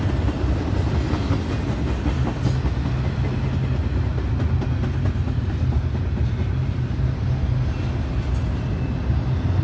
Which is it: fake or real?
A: real